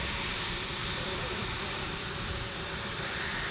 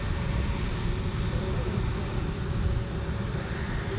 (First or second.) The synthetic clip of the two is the first